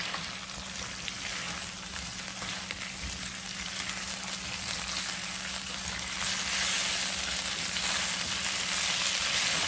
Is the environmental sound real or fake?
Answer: real